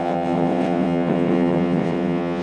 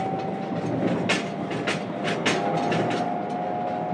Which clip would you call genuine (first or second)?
second